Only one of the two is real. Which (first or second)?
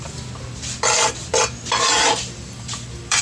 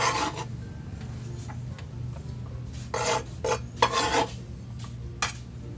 second